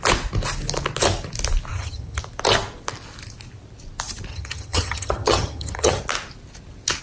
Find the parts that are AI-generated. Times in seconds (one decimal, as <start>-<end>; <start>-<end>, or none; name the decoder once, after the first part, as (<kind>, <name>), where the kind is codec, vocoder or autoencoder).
1.7-2.2 (vocoder, HiFi-GAN); 4.3-6.0